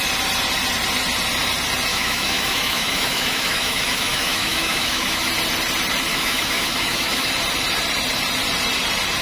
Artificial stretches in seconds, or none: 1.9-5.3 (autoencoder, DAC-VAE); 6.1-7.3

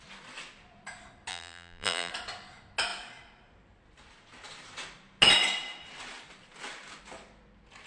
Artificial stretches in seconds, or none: 1.3-2.1 (vocoder, BigVGAN v2)

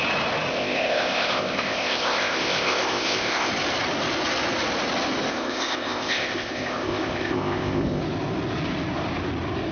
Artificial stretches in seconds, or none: 0.5-3.5 (codec, ZipCodec); 5.3-8.0

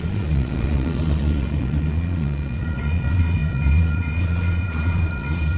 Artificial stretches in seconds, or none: 0.0-5.6 (vocoder, Vocos)

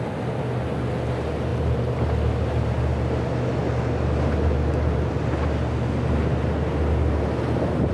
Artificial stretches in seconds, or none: none

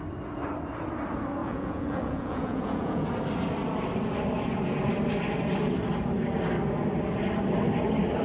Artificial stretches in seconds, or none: 1.4-3.1 (vocoder, Vocos)